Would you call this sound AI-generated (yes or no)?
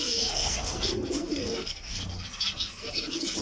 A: yes